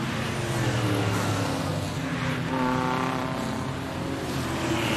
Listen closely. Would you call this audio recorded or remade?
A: recorded